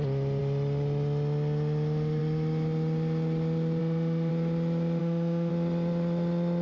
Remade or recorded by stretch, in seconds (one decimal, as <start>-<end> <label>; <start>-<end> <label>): 0.0-3.8 recorded; 3.8-4.3 remade; 4.3-5.0 recorded; 5.0-5.5 remade; 5.5-6.6 recorded